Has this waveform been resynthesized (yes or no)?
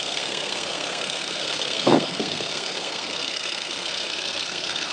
yes